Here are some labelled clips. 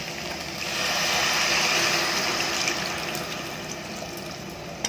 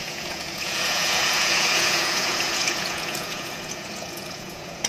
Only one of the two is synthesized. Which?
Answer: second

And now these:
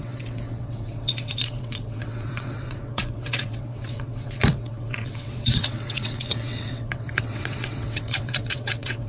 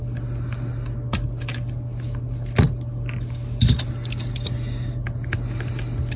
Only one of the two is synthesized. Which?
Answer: first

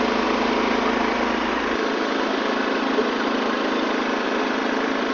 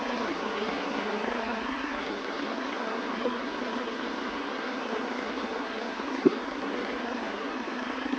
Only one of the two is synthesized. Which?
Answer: second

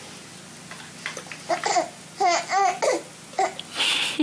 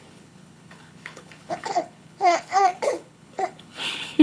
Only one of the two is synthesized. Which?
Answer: second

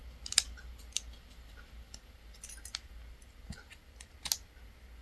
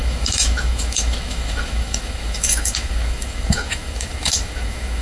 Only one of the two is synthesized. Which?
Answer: second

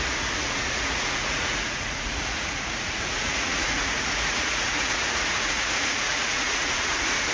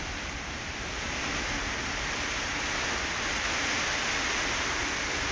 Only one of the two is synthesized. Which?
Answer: first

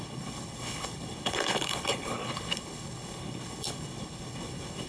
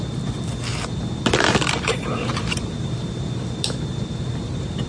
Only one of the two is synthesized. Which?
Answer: first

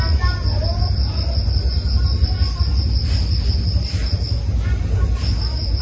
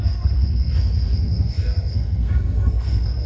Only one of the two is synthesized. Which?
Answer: second